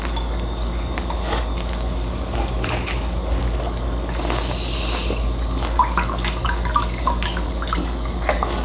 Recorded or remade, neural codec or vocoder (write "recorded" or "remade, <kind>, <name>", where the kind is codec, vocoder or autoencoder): remade, codec, DAC